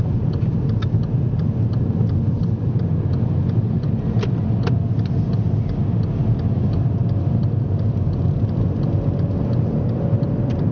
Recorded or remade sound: recorded